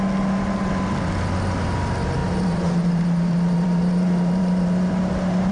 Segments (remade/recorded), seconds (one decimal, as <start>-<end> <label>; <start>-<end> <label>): 0.0-2.2 recorded; 2.2-5.5 remade